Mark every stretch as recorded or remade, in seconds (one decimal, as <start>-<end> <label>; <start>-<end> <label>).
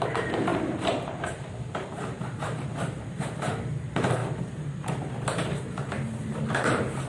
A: 0.0-7.1 remade